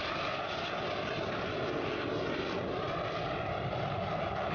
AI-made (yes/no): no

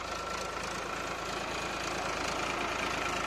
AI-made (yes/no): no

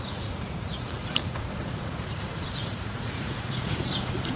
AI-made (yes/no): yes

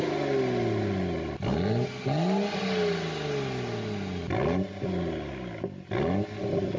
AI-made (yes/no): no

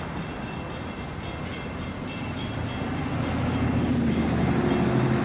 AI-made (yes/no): no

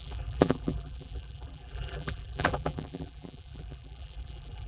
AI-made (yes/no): yes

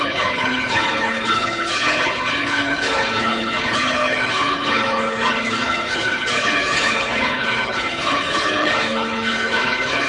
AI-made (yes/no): yes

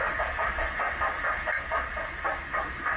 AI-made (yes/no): no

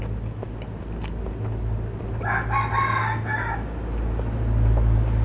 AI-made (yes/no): no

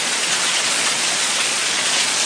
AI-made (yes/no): yes